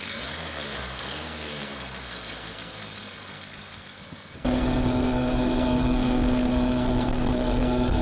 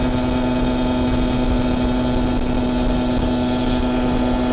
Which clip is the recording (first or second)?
second